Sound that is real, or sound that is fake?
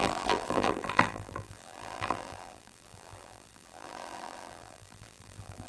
fake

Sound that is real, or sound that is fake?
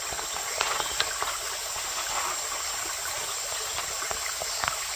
real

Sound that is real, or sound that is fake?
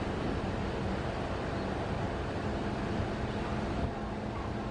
real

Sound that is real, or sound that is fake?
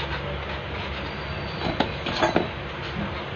real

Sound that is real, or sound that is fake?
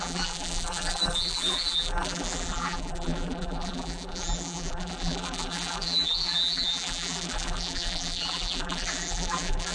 fake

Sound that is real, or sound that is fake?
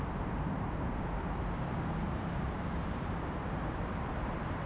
fake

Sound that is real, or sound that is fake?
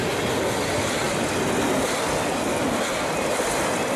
real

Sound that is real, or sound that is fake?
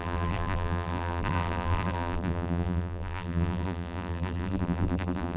fake